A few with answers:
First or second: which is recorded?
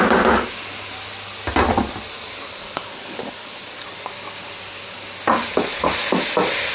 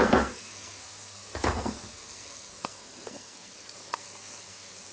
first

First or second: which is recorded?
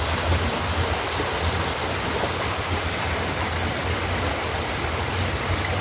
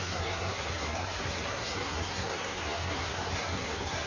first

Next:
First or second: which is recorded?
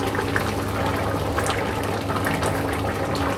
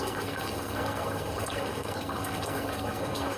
first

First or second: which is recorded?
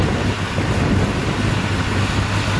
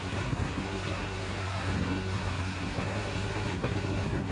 first